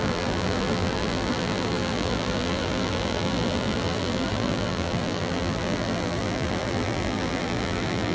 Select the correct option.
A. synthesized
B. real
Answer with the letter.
A